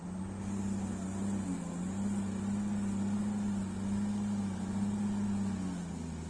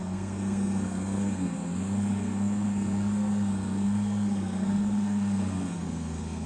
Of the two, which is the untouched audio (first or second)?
first